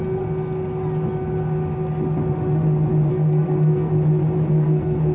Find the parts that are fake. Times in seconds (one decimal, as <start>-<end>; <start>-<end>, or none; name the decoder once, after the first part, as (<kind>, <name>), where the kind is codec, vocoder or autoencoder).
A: 3.1-3.9 (codec, SNAC); 4.5-5.1